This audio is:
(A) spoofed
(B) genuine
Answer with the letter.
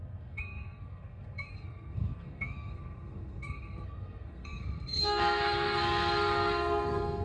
A